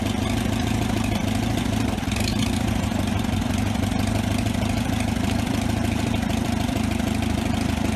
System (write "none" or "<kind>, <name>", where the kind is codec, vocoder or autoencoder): vocoder, BigVGAN v2